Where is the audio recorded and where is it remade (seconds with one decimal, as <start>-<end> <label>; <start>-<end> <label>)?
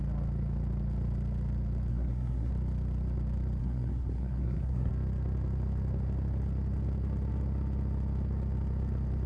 0.0-1.9 recorded; 1.9-2.5 remade; 2.5-3.6 recorded; 3.6-4.9 remade; 4.9-9.3 recorded